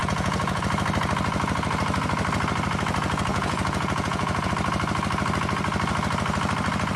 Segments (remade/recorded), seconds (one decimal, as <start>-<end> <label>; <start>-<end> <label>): 0.0-0.6 remade; 0.6-3.3 recorded; 3.3-4.5 remade; 4.5-7.0 recorded